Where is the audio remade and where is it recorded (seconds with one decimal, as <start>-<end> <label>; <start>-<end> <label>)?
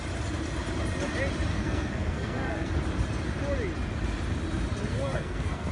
0.0-1.5 recorded; 1.5-2.7 remade; 2.7-4.9 recorded; 4.9-5.7 remade